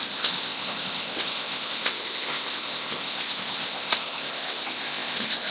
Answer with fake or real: fake